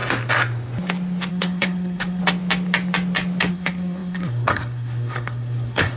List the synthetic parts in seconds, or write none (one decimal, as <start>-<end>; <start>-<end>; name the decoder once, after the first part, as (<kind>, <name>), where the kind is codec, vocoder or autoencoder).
1.3-2.2 (codec, SNAC); 3.5-6.0